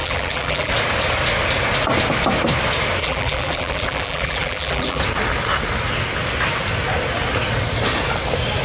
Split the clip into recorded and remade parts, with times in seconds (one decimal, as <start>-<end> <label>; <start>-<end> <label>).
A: 0.0-0.7 remade; 0.7-3.0 recorded; 3.0-5.0 remade; 5.0-8.6 recorded